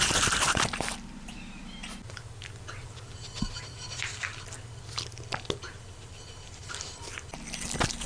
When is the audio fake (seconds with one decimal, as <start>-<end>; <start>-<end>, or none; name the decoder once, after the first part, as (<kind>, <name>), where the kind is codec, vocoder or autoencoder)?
0.0-1.8 (vocoder, BigVGAN v2); 2.7-4.3